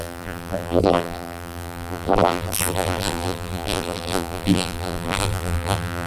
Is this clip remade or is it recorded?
remade